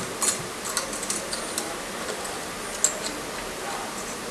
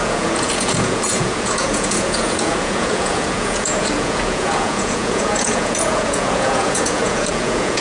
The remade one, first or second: second